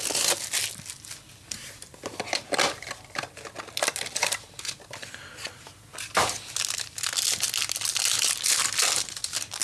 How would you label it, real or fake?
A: real